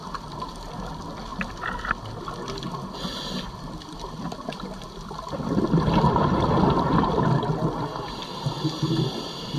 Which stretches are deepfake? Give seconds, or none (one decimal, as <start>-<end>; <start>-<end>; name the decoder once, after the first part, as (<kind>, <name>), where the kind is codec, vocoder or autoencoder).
none